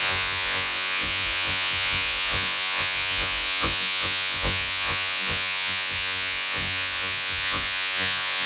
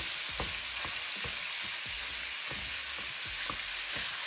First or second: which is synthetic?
first